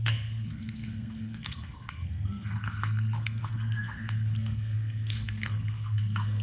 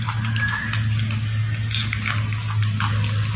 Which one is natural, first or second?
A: second